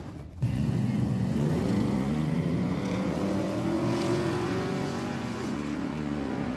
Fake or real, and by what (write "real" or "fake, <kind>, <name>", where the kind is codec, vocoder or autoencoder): fake, vocoder, Vocos